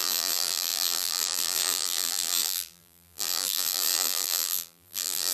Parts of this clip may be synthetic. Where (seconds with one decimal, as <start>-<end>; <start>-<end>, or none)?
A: 0.0-5.3